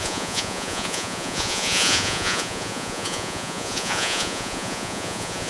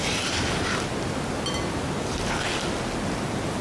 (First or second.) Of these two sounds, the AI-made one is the first